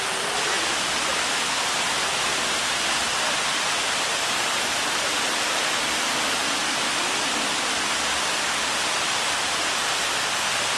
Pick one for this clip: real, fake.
real